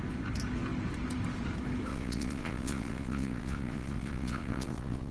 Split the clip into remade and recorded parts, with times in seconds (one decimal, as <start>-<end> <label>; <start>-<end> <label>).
0.0-1.9 recorded; 1.9-5.1 remade